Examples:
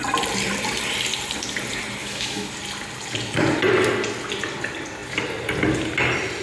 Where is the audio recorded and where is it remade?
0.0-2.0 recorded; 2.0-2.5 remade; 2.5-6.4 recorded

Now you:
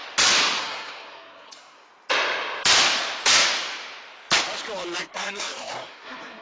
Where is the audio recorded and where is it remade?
0.0-0.6 recorded; 0.6-1.8 remade; 1.8-5.0 recorded; 5.0-6.4 remade